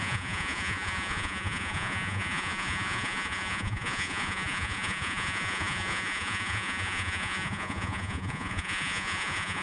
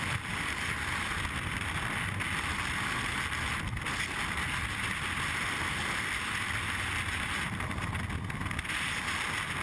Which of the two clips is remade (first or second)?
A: first